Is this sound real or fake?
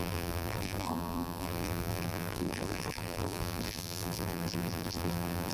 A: fake